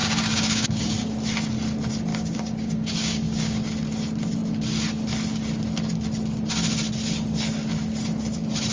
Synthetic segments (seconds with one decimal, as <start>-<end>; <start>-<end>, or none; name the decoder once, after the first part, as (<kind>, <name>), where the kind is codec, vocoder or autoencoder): 0.0-0.8 (codec, DAC); 2.1-3.6

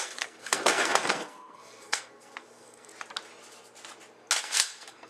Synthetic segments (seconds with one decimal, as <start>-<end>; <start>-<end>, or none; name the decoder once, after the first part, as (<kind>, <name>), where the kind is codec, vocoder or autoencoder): 0.0-2.9 (codec, SNAC); 4.4-5.1

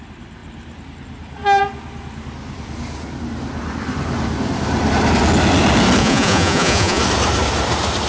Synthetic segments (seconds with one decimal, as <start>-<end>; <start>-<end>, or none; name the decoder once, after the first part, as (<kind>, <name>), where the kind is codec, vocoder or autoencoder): 6.0-7.0 (vocoder, Vocos)